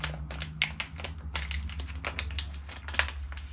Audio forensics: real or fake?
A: real